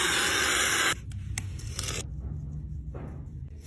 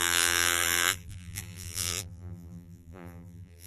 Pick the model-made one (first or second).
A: second